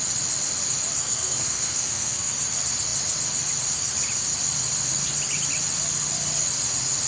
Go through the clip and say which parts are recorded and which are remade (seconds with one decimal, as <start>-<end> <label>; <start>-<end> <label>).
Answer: 0.0-1.0 recorded; 1.0-2.3 remade; 2.3-7.1 recorded